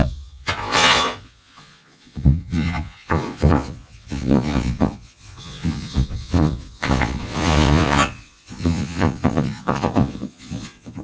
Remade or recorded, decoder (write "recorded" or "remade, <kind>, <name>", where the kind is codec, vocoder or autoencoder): remade, vocoder, Vocos